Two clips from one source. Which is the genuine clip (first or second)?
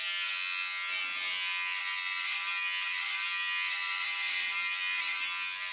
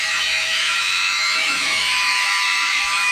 first